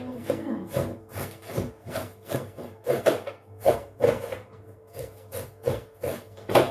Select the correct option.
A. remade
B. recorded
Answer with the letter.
A